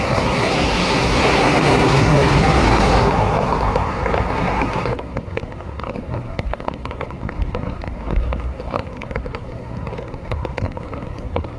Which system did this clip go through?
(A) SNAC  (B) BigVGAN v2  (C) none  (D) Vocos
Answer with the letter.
A